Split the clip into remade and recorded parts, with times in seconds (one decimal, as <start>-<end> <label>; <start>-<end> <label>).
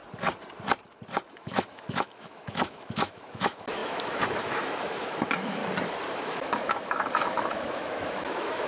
0.0-1.3 recorded; 1.3-5.6 remade; 5.6-6.2 recorded; 6.2-8.7 remade